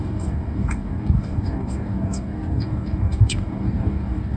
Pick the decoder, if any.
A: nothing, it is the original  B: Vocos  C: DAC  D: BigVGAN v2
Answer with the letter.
C